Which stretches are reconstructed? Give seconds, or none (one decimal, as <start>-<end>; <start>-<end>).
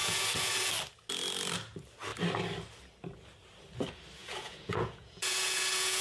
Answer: 0.0-0.7; 4.2-6.0